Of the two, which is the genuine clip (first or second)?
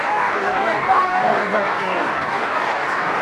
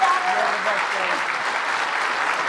second